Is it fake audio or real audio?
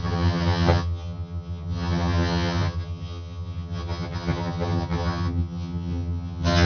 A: fake